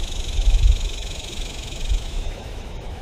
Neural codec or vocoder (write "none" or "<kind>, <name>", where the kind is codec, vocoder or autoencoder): autoencoder, DAC-VAE